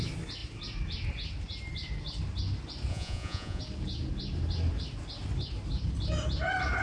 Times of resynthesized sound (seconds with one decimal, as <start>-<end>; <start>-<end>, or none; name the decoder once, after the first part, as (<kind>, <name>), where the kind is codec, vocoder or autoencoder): 2.9-3.6 (vocoder, Vocos)